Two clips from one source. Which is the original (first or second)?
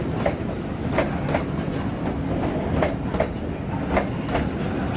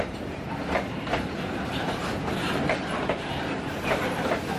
first